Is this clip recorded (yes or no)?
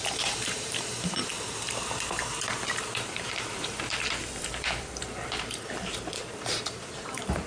no